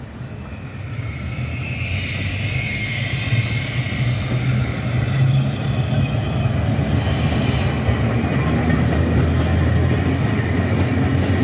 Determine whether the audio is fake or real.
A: real